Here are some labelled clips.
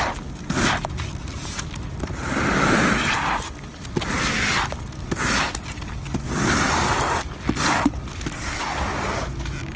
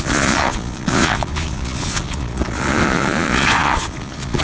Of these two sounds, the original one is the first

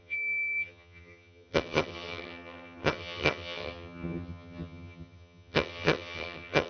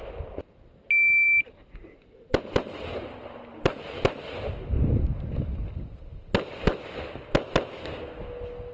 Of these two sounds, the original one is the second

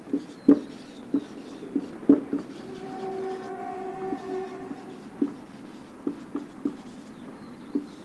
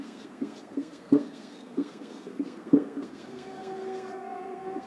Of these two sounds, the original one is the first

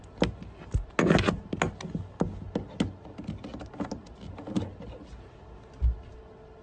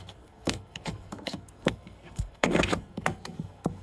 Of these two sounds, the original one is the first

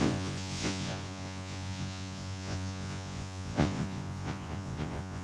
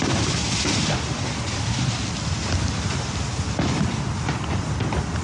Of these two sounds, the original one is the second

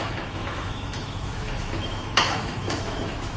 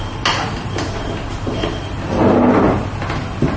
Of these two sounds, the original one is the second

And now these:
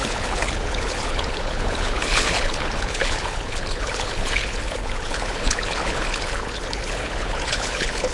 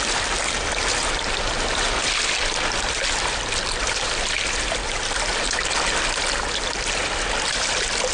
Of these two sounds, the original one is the second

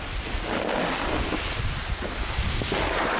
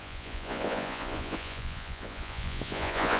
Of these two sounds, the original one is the first